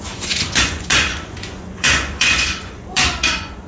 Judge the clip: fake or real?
fake